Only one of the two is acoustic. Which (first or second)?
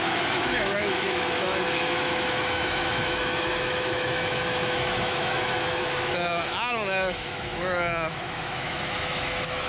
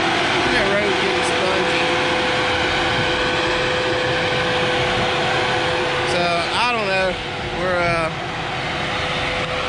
second